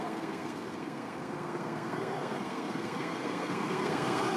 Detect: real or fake fake